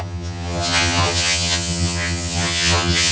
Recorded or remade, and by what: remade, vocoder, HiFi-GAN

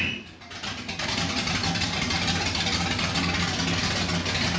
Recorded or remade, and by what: recorded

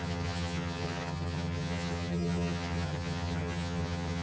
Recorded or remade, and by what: remade, vocoder, HiFi-GAN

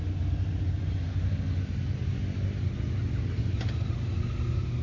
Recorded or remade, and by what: recorded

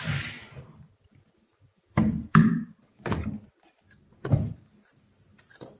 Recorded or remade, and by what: recorded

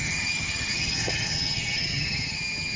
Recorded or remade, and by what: remade, vocoder, HiFi-GAN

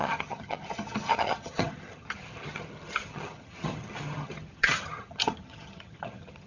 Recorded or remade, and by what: remade, vocoder, HiFi-GAN